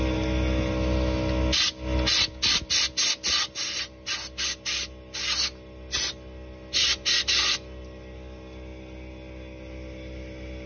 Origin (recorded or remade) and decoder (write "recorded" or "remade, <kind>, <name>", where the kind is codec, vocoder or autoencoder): recorded